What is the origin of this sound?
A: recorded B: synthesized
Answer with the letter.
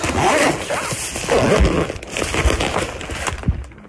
A